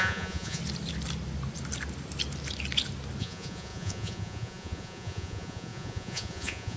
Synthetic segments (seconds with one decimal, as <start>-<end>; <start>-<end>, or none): 0.0-0.6; 3.2-6.8

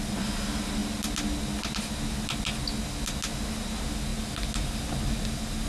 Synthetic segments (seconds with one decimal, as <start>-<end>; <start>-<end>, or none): none

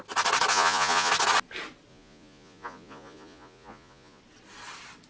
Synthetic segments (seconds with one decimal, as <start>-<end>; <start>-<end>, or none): 0.5-1.1; 1.9-4.2

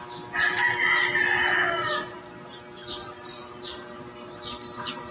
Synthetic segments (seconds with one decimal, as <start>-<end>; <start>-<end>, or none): none